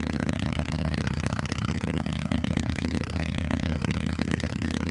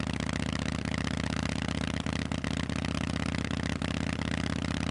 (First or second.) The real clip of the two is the second